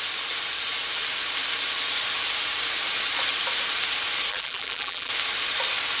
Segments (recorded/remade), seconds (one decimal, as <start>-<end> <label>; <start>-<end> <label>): 0.0-4.3 recorded; 4.3-5.1 remade; 5.1-6.0 recorded